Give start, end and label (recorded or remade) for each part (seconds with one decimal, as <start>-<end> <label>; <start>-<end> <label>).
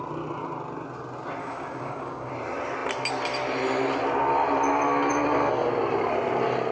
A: 0.0-1.4 recorded; 1.4-2.3 remade; 2.3-6.7 recorded